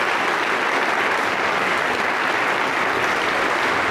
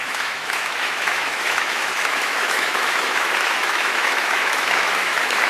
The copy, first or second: second